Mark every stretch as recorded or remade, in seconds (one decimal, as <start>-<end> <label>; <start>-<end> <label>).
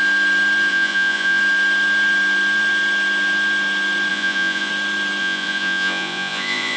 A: 0.0-0.7 recorded; 0.7-1.4 remade; 1.4-4.1 recorded; 4.1-4.7 remade; 4.7-5.2 recorded; 5.2-6.8 remade